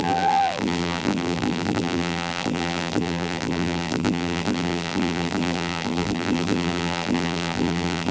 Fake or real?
fake